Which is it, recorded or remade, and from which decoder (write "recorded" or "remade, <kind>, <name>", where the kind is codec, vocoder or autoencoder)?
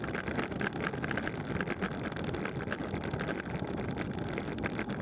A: recorded